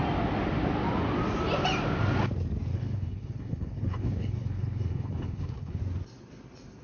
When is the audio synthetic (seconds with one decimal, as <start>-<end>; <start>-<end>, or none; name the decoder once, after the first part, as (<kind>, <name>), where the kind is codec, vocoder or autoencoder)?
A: 2.7-5.8 (codec, HILCodec)